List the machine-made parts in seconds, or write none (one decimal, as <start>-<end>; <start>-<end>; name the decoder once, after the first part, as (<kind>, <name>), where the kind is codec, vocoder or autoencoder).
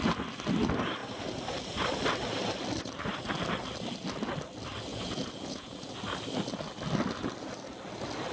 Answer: 4.9-5.9 (vocoder, Vocos)